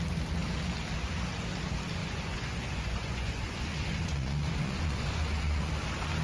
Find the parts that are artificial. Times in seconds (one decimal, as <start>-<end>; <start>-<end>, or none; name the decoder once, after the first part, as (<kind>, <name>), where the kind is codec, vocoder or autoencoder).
2.0-5.7 (vocoder, Vocos)